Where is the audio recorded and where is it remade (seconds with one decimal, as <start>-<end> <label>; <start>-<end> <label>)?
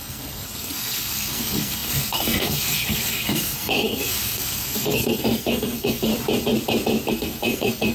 0.0-6.1 remade; 6.1-7.1 recorded; 7.1-7.9 remade